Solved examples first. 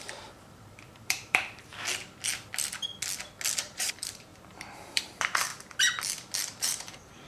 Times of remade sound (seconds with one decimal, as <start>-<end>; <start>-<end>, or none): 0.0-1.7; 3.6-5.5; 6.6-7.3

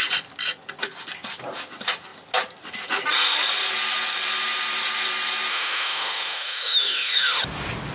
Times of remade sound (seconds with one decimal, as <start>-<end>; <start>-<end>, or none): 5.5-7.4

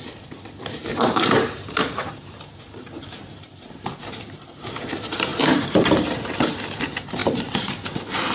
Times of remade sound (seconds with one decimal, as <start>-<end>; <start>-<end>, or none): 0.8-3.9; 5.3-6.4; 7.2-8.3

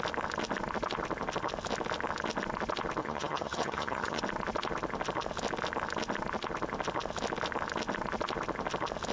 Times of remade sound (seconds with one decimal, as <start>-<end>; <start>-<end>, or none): 3.0-4.2

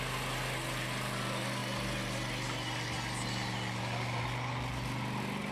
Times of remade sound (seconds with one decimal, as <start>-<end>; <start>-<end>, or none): none